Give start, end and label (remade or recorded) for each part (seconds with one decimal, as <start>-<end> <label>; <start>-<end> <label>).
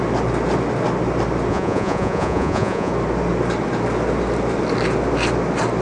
0.0-1.5 recorded; 1.5-2.9 remade; 2.9-5.8 recorded